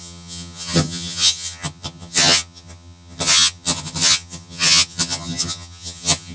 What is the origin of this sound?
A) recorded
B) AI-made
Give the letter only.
B